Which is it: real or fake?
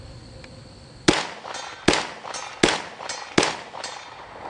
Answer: real